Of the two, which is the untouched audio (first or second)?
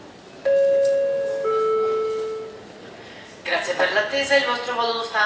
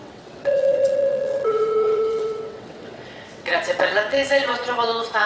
first